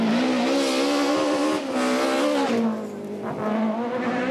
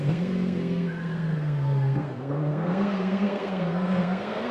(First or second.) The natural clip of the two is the first